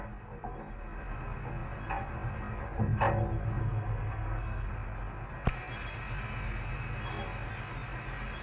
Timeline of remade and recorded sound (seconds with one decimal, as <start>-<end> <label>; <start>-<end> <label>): 0.0-3.6 recorded; 3.6-4.7 remade; 4.7-8.4 recorded